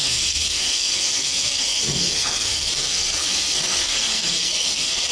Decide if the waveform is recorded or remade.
remade